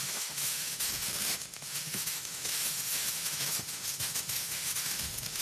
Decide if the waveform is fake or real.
fake